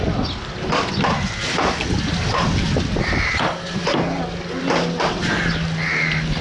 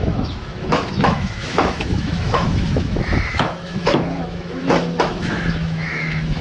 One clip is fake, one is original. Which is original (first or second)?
first